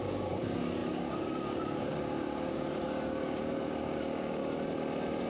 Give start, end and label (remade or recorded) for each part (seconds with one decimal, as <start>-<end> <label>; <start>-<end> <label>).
0.0-4.4 remade; 4.4-5.3 recorded